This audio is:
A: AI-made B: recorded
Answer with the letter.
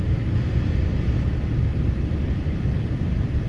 B